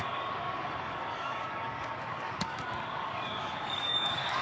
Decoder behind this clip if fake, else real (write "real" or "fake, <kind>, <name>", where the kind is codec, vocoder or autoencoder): fake, codec, DAC